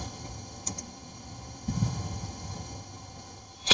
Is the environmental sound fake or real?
fake